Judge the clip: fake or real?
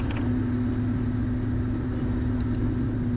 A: real